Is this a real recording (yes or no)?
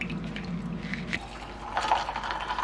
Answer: no